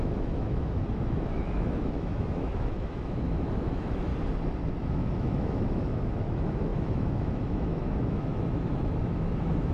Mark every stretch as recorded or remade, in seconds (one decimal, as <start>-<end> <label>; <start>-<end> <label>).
0.0-4.1 remade; 4.1-4.8 recorded; 4.8-9.7 remade